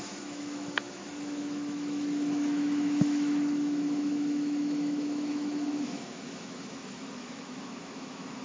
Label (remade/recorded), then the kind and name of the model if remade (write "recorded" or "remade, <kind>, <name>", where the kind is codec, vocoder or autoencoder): remade, autoencoder, DAC-VAE